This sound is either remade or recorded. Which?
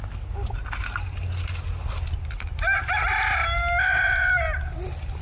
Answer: recorded